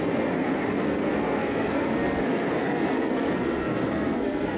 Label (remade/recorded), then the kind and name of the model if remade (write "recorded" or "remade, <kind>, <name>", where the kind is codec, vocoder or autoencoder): remade, codec, SNAC